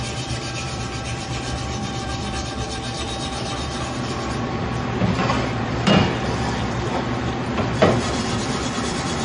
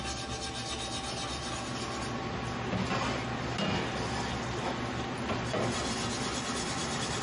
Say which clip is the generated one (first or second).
first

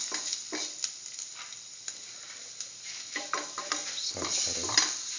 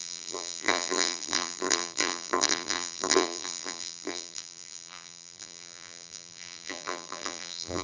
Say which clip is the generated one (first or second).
second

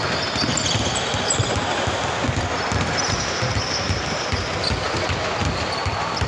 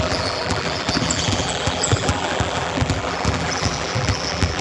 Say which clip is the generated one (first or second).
second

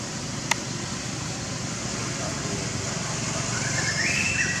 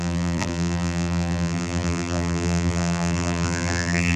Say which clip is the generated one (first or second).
second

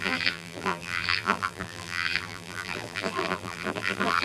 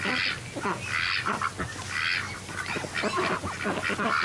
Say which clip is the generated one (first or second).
first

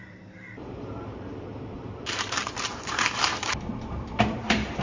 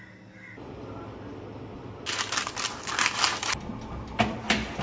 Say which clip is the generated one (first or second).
first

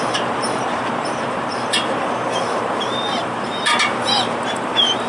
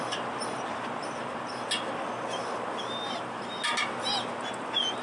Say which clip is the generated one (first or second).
first